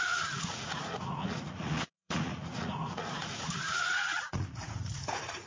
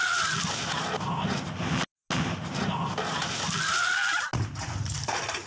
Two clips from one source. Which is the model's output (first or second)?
first